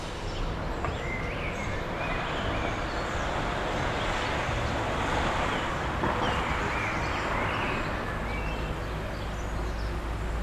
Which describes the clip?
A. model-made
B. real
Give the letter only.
B